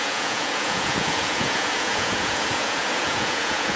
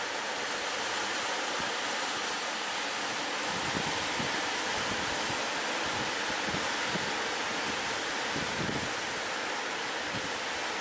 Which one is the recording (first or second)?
second